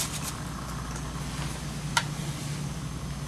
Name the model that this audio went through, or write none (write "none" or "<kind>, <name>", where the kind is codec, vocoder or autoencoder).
none